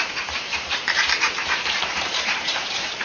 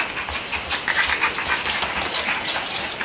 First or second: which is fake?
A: first